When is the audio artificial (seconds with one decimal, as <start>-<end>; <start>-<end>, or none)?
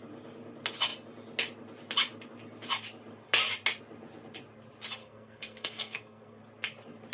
5.0-6.4